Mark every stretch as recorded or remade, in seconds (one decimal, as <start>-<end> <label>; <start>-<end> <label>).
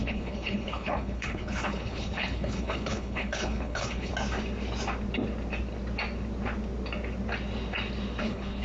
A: 0.0-4.1 remade; 4.1-8.2 recorded; 8.2-8.6 remade